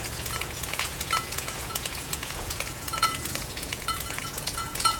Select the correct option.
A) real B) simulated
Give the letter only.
B